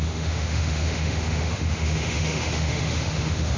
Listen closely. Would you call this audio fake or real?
fake